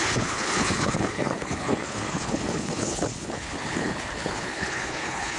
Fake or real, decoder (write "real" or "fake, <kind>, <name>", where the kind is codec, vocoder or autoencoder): fake, codec, HILCodec